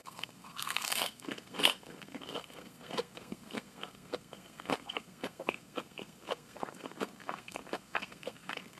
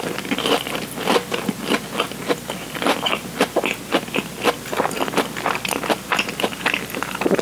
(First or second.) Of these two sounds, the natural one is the second